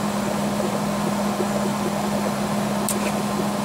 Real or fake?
real